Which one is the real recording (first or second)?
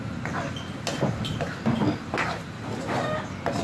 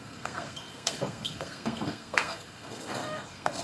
first